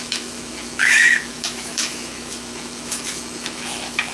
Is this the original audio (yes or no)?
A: no